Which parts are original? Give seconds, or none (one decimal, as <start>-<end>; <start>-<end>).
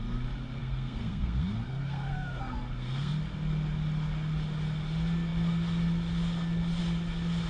0.0-0.6; 3.1-7.5